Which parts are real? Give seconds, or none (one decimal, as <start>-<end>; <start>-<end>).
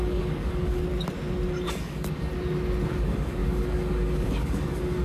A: 0.8-1.7; 2.3-2.9